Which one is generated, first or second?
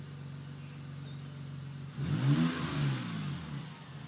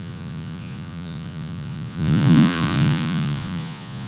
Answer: second